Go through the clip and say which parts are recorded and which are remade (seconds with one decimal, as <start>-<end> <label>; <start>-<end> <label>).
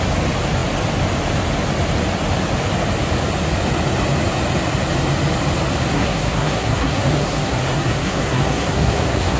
0.0-5.9 recorded; 5.9-9.4 remade